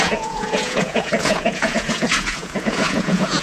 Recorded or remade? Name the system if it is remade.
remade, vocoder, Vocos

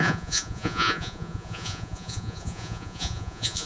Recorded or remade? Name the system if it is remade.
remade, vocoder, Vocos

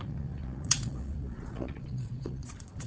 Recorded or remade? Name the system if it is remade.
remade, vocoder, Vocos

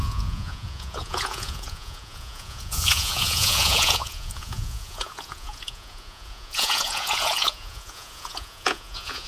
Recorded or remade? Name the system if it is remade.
remade, vocoder, Vocos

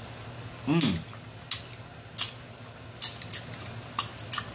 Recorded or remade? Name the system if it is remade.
recorded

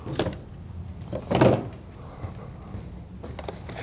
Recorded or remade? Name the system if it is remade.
recorded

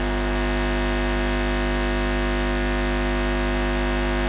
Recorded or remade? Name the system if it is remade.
recorded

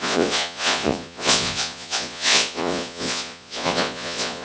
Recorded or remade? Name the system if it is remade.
remade, vocoder, Vocos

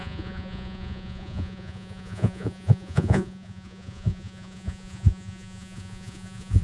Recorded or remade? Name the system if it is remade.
remade, vocoder, Vocos